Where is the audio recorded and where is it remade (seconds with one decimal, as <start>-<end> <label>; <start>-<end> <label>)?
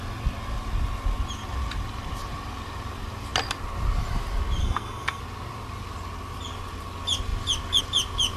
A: 0.0-4.6 recorded; 4.6-5.2 remade; 5.2-8.4 recorded